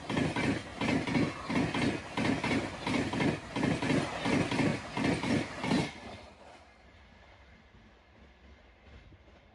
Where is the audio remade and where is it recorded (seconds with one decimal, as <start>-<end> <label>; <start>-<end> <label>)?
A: 0.0-9.5 recorded